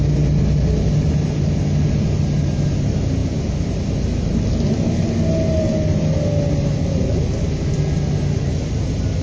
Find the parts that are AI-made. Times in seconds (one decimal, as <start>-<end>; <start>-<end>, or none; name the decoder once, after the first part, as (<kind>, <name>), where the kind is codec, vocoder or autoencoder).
none